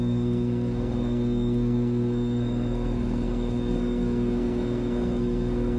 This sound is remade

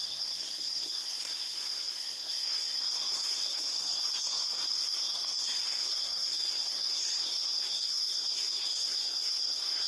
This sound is remade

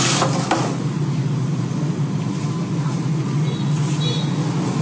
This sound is recorded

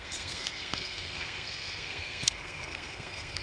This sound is remade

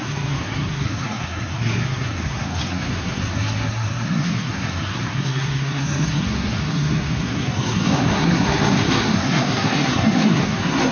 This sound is remade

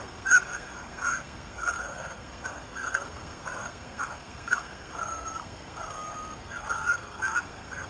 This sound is remade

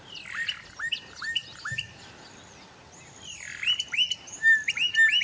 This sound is recorded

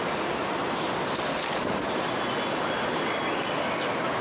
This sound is recorded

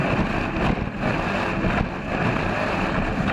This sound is recorded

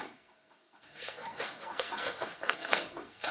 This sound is remade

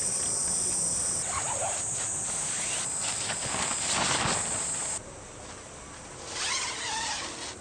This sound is recorded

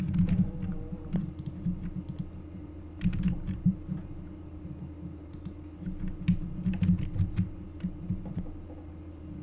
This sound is recorded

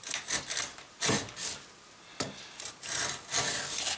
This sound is recorded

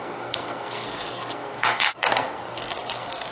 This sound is remade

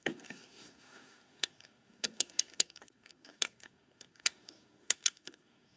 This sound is remade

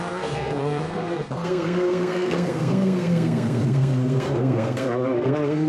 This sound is remade